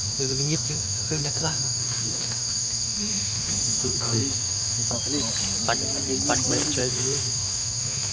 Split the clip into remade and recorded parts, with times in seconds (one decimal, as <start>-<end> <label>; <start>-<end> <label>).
0.0-4.9 remade; 4.9-6.8 recorded; 6.8-8.1 remade